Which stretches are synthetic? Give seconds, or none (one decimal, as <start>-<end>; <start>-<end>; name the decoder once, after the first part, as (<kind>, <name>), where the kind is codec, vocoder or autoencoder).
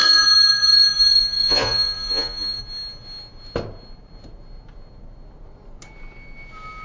0.0-2.6 (vocoder, Vocos)